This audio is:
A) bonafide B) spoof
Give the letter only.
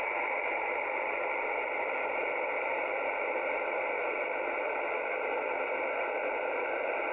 A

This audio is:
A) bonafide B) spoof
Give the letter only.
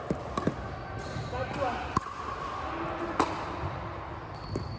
A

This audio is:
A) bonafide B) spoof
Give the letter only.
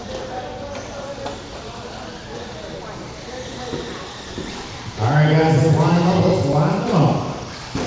A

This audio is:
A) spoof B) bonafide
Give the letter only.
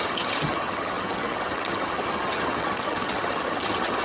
A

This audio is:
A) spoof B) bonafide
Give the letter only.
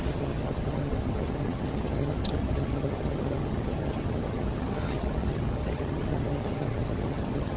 A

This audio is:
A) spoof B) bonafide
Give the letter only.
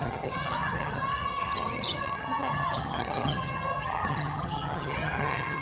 A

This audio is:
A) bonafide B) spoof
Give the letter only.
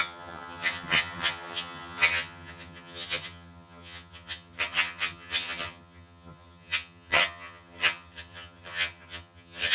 B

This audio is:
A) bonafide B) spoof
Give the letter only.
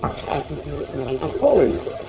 B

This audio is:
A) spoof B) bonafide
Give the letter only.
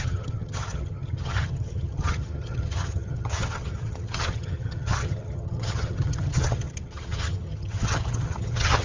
A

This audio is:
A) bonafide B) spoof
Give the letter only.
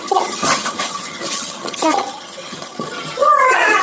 B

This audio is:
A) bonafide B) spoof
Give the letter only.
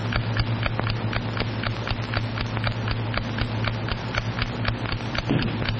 A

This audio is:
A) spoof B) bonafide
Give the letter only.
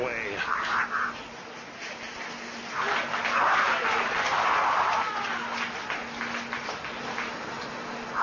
B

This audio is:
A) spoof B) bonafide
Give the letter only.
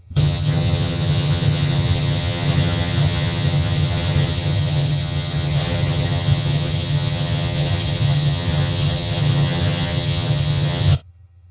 A